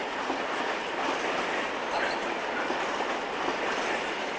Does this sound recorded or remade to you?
recorded